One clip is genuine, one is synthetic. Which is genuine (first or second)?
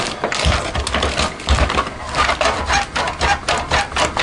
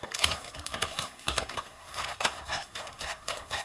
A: first